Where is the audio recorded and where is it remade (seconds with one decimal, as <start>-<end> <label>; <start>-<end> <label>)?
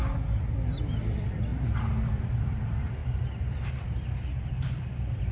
0.0-0.8 recorded; 0.8-1.5 remade; 1.5-2.1 recorded; 2.1-5.3 remade